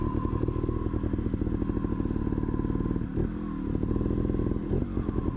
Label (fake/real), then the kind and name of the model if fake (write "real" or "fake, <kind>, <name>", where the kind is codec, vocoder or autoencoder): real